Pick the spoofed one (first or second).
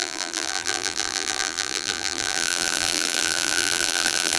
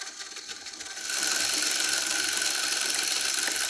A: first